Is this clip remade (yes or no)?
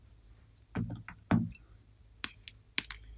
no